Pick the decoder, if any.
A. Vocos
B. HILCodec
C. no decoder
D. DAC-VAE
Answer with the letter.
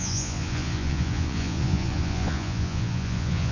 A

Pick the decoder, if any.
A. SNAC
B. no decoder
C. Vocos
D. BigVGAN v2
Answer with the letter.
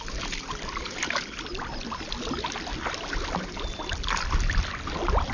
D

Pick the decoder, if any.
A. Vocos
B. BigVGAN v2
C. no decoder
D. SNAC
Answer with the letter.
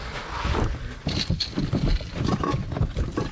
B